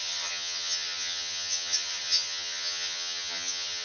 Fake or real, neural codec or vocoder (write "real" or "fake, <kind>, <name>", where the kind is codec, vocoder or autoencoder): fake, vocoder, HiFi-GAN